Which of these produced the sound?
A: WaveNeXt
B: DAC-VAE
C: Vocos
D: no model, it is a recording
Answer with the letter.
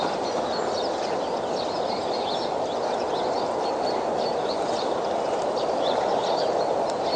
D